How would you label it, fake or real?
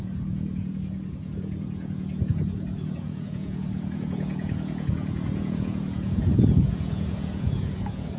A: fake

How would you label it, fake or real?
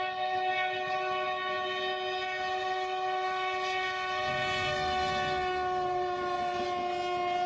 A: real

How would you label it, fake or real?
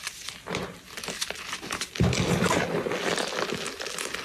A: real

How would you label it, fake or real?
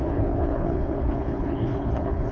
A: fake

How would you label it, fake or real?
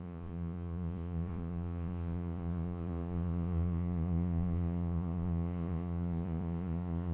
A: fake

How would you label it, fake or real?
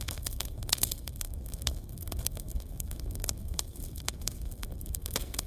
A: fake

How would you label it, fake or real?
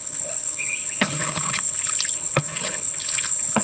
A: fake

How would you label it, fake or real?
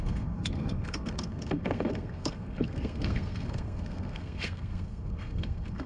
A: fake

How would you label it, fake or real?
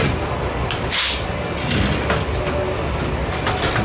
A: real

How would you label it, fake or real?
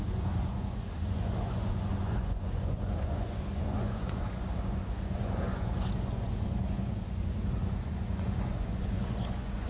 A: fake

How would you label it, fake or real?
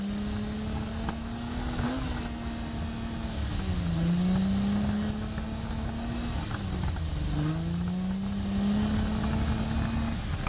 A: real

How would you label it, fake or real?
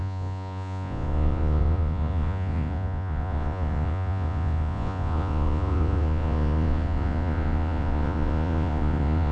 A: fake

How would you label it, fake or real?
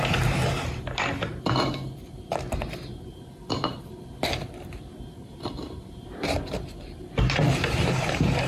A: fake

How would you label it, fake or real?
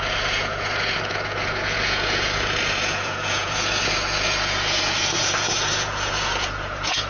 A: fake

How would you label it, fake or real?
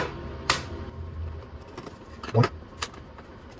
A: fake